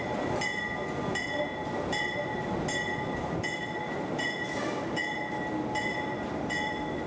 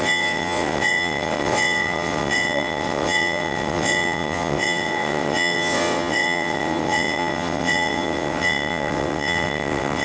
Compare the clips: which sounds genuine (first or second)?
first